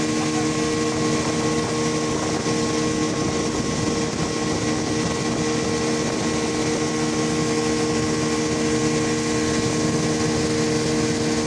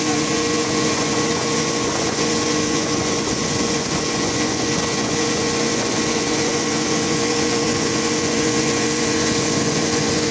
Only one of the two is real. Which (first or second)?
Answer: first